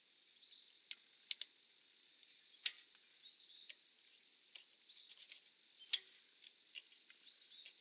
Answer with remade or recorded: recorded